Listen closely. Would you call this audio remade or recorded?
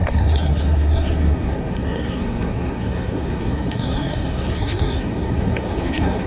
remade